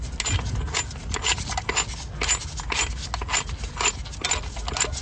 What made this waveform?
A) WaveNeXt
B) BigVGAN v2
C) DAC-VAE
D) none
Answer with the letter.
D